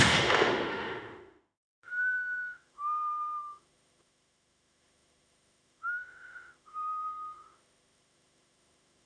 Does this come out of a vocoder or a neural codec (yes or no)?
yes